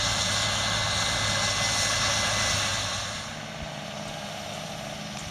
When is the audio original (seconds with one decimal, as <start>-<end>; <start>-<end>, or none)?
0.0-5.3